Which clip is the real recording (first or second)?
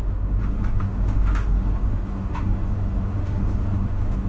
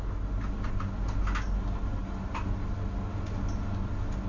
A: second